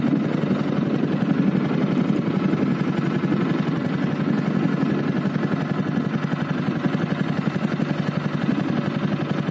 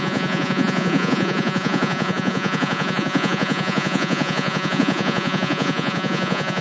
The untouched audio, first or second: first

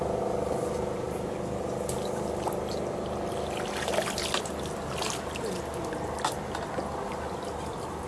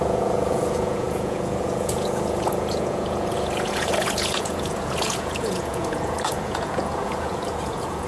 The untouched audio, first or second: first